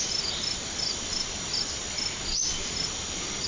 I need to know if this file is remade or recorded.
recorded